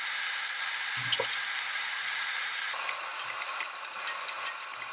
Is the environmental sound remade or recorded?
recorded